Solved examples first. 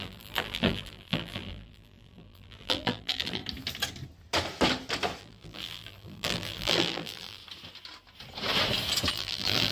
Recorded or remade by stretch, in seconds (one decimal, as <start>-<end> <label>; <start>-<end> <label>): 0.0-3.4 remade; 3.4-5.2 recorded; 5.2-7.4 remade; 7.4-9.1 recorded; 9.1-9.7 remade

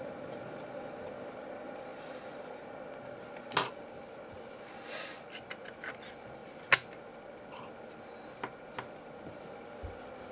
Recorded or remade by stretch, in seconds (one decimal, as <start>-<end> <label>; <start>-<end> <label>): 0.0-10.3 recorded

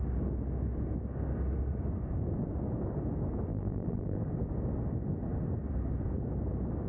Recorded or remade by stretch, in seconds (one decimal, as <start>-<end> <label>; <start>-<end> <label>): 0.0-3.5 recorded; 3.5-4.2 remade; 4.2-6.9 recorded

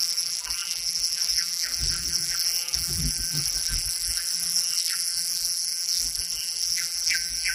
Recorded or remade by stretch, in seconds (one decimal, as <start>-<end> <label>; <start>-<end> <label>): 0.0-7.5 remade

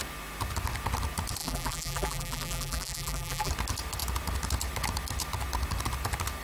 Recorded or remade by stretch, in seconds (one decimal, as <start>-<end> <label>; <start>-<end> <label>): 0.0-1.4 recorded; 1.4-3.5 remade; 3.5-6.4 recorded

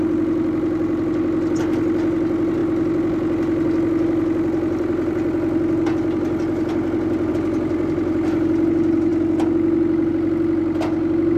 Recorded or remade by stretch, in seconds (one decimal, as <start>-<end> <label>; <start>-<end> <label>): 0.0-11.4 recorded